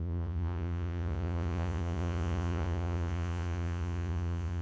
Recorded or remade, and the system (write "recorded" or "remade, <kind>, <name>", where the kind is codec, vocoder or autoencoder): remade, vocoder, Vocos